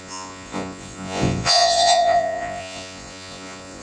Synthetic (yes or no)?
yes